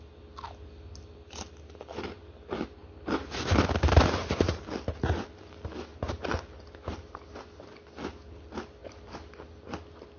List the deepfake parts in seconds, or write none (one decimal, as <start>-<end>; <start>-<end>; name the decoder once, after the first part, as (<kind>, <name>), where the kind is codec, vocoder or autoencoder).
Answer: none